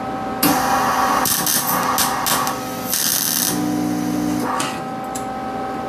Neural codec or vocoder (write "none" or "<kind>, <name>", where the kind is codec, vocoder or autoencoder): none